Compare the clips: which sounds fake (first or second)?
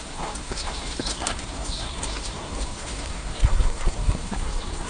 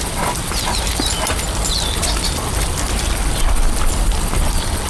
first